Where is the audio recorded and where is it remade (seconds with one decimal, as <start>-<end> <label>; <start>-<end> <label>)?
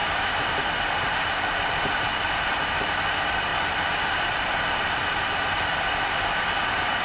0.0-7.0 recorded